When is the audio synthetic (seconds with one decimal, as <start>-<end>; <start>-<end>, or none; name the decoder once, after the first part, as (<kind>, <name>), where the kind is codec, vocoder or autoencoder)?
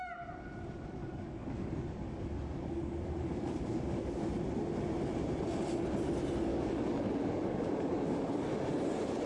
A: 1.0-4.3 (codec, DAC); 6.5-8.5